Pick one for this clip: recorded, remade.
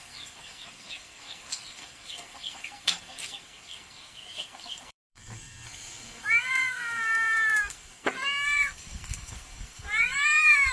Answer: remade